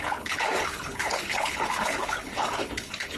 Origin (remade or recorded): remade